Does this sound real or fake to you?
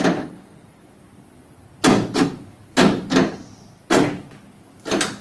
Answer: real